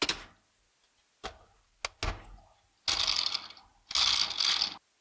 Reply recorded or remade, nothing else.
recorded